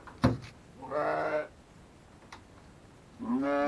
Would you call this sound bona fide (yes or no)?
yes